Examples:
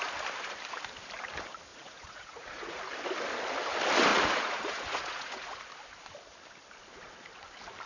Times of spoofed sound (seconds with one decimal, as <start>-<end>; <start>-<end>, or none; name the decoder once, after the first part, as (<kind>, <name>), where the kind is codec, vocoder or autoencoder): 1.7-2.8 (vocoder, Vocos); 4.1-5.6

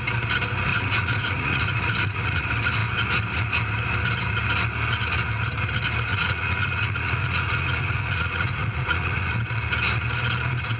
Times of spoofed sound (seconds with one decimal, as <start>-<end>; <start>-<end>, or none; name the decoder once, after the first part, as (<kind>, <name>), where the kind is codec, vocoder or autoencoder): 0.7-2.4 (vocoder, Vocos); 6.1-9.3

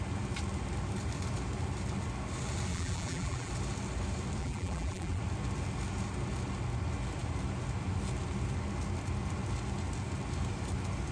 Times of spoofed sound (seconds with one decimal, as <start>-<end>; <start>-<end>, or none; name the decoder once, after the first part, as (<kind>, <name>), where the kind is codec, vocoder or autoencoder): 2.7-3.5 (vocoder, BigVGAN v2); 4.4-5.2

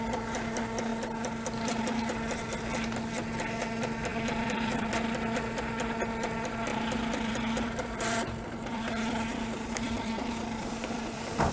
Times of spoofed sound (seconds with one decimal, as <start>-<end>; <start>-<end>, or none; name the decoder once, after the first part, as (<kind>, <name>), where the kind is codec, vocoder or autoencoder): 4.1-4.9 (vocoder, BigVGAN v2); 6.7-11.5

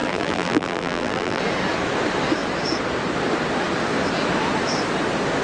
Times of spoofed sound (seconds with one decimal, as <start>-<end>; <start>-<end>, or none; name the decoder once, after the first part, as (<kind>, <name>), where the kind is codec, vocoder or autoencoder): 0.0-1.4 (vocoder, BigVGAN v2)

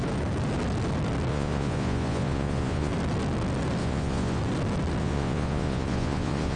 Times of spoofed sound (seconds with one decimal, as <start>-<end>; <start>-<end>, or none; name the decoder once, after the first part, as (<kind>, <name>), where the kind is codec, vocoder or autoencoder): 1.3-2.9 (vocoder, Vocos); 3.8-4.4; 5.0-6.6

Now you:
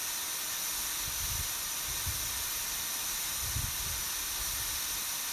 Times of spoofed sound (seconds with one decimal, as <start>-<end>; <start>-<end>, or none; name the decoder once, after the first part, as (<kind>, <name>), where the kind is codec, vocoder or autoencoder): none